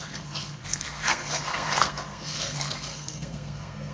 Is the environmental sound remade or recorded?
remade